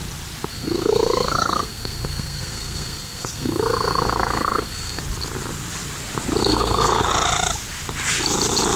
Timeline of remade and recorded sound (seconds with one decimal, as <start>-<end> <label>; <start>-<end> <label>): 0.0-0.5 recorded; 0.5-5.0 remade; 5.0-6.4 recorded; 6.4-7.0 remade; 7.0-8.8 recorded